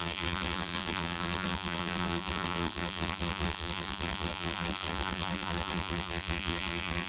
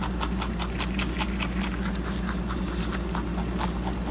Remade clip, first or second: first